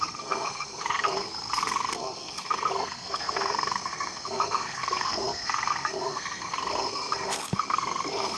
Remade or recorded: remade